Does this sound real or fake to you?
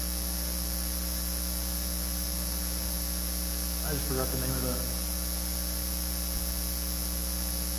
real